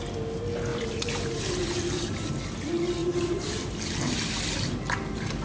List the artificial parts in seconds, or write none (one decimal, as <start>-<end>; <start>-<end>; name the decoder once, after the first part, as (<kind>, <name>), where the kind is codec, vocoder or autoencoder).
0.7-2.3 (vocoder, BigVGAN v2); 3.0-4.1